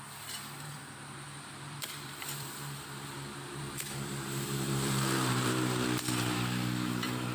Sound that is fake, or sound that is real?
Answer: fake